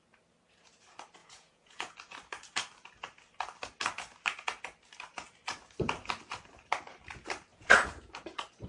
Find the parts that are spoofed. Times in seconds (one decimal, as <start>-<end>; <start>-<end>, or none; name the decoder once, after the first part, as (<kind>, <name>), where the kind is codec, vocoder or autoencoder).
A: 1.2-1.9 (vocoder, Vocos); 7.5-8.1